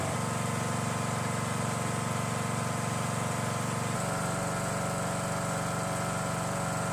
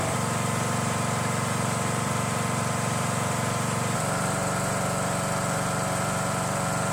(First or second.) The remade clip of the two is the second